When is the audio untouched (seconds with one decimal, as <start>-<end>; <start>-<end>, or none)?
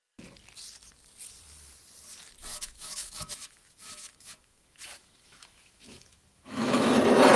0.0-2.5; 6.9-7.4